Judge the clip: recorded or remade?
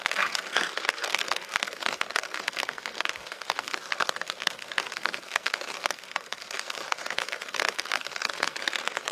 remade